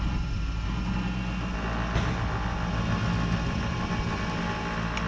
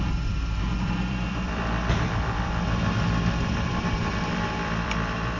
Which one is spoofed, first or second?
second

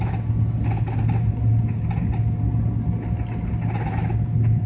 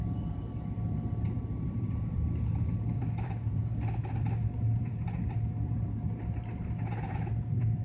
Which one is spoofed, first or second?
second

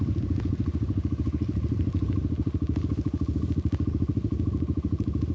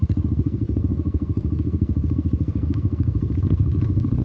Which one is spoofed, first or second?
second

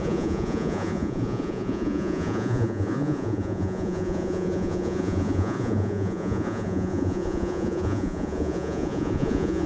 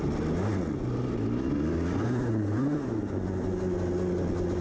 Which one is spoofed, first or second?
first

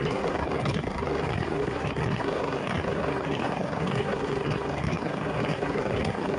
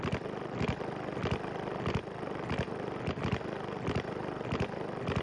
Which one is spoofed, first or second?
first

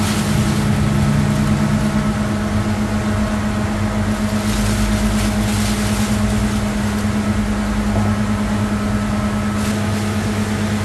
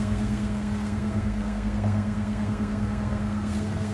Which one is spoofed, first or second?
second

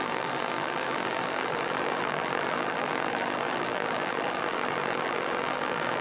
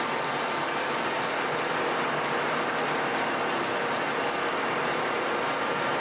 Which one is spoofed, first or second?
first